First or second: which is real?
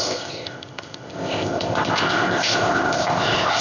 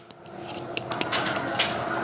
second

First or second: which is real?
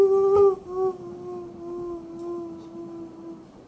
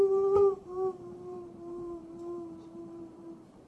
first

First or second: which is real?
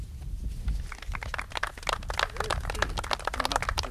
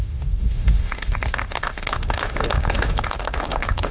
first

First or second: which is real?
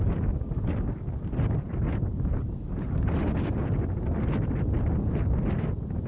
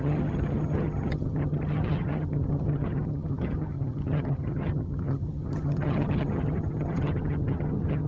first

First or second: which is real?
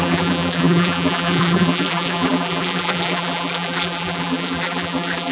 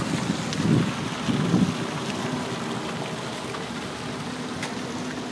second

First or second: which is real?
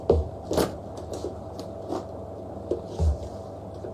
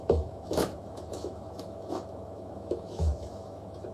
first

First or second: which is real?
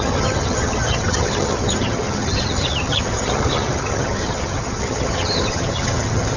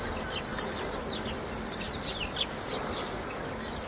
second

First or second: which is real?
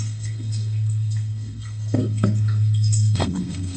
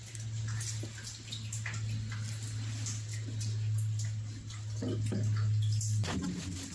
second